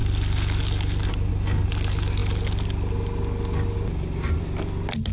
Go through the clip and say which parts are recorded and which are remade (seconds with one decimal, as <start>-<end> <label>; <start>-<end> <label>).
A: 0.0-5.1 recorded